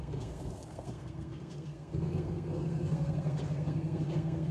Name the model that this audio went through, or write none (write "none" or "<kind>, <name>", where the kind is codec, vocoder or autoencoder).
codec, SNAC